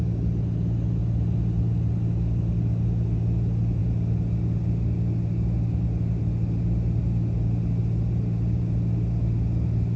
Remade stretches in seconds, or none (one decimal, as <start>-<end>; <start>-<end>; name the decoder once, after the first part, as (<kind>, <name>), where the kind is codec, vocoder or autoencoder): none